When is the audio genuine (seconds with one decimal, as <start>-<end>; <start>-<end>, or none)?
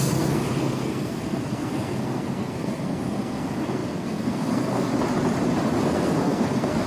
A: 4.9-5.8